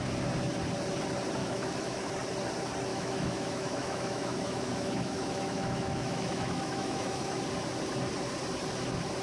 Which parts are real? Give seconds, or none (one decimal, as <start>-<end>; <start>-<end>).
0.0-1.4; 2.1-2.9; 7.4-9.2